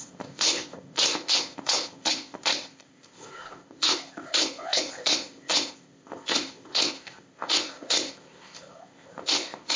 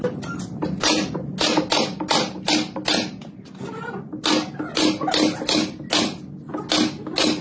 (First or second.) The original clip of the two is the second